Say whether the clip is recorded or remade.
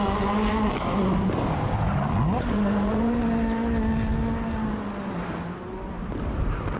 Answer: recorded